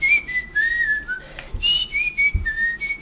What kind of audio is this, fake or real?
real